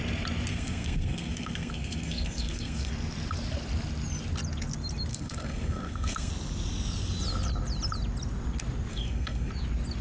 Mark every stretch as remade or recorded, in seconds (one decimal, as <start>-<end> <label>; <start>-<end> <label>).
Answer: 0.0-0.5 recorded; 0.5-2.9 remade; 2.9-5.1 recorded; 5.1-6.3 remade; 6.3-8.9 recorded; 8.9-9.5 remade; 9.5-10.0 recorded